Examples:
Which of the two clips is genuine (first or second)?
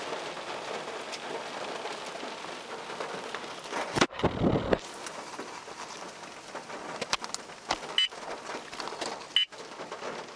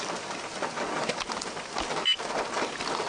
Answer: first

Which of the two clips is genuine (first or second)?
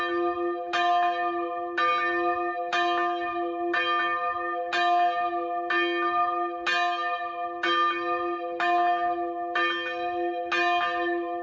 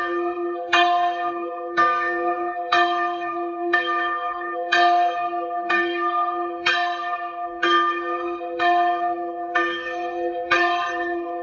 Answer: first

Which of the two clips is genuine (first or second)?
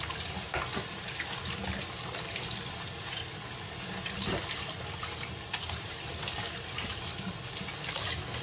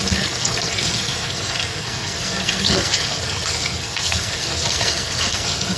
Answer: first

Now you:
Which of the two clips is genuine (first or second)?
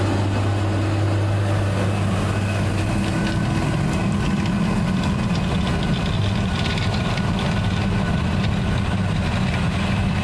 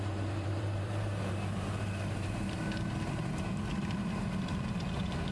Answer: first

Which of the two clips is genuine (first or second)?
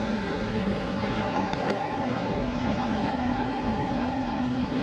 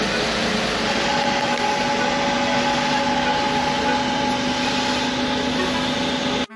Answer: second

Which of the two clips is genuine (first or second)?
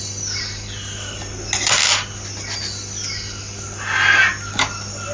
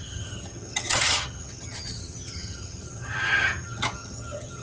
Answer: first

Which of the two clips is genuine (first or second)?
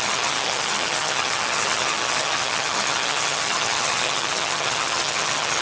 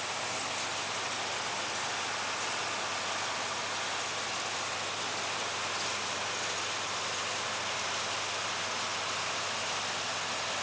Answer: second